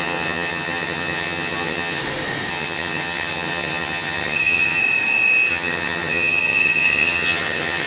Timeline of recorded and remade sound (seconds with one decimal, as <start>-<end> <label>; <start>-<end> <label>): 0.0-2.0 remade; 2.0-2.5 recorded; 2.5-4.8 remade; 4.8-5.5 recorded; 5.5-7.9 remade